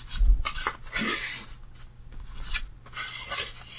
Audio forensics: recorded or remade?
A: remade